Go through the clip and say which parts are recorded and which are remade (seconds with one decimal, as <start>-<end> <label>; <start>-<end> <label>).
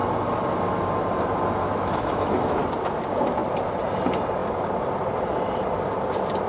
0.0-1.6 recorded; 1.6-2.6 remade; 2.6-6.5 recorded